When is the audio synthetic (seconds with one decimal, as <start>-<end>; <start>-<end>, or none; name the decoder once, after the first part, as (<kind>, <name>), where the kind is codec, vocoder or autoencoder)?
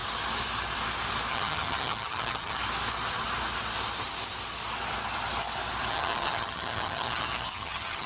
1.3-2.6 (vocoder, HiFi-GAN); 5.9-8.1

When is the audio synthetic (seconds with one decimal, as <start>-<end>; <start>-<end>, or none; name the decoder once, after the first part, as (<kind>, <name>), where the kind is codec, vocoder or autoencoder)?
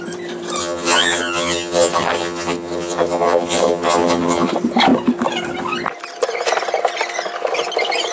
0.6-4.5 (vocoder, HiFi-GAN)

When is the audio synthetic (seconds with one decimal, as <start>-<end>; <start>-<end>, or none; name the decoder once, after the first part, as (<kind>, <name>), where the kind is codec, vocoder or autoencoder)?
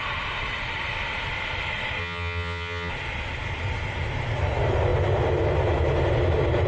2.0-2.9 (vocoder, HiFi-GAN)